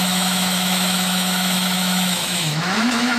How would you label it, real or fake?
fake